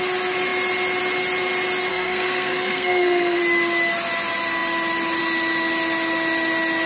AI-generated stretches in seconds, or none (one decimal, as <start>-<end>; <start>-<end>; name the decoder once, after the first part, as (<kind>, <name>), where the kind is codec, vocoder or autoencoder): 1.9-3.4 (codec, SNAC)